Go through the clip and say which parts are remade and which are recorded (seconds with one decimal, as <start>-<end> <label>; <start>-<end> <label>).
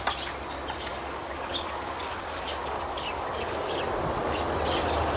0.0-0.9 recorded; 0.9-3.8 remade; 3.8-5.2 recorded